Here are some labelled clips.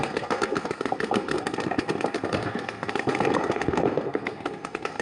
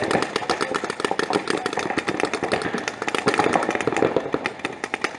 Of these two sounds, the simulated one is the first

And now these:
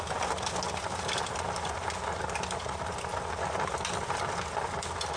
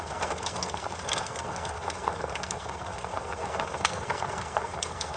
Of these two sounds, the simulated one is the second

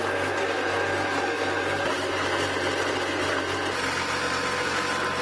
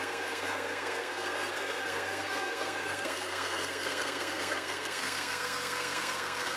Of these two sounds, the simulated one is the second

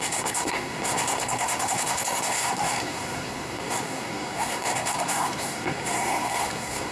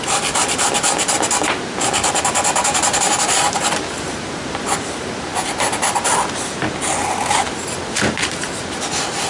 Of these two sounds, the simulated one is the first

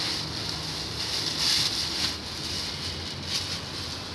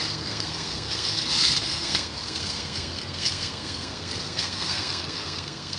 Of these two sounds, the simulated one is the second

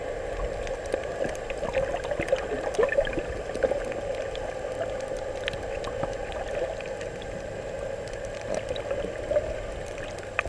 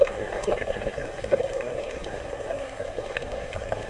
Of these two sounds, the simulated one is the second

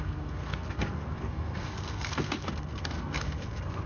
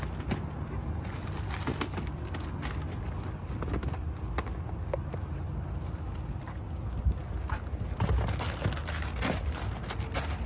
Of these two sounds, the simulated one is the first